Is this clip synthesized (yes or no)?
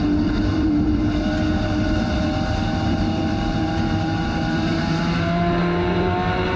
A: yes